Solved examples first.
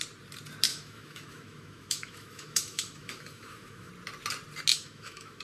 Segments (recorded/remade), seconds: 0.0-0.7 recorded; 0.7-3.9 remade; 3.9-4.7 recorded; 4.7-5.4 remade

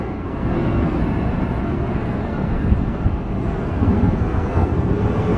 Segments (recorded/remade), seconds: 0.0-1.0 remade; 1.0-1.6 recorded; 1.6-5.4 remade

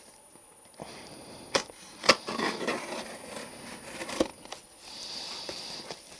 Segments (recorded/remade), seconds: 0.0-2.7 remade; 2.7-4.2 recorded; 4.2-6.2 remade

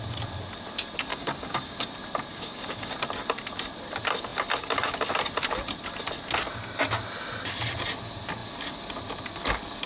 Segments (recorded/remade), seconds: 0.0-1.1 recorded; 1.1-1.9 remade; 1.9-2.3 recorded; 2.3-2.9 remade; 2.9-9.9 recorded

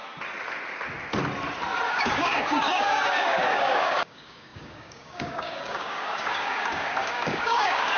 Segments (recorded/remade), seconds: 0.0-1.9 recorded; 1.9-8.0 remade